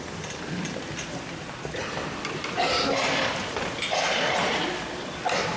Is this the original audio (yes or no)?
yes